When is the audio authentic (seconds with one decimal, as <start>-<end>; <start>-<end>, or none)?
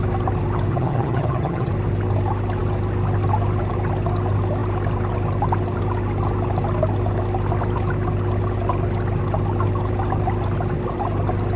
0.0-0.7; 1.7-11.6